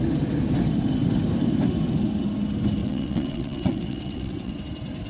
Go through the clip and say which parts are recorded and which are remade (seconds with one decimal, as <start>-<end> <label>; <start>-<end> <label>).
0.0-2.8 recorded; 2.8-4.6 remade; 4.6-5.1 recorded